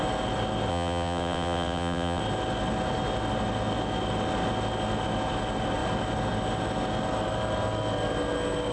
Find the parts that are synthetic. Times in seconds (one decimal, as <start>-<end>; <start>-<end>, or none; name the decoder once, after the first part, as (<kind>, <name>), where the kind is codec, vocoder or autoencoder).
0.7-2.2 (vocoder, WaveNeXt)